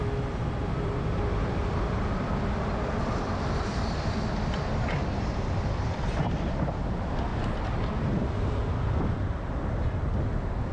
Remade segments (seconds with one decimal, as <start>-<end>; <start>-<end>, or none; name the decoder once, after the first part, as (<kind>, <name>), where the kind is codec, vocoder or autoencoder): 0.0-7.3 (vocoder, BigVGAN v2); 9.8-10.7